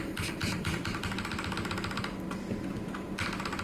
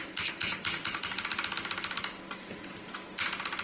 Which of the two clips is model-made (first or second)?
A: first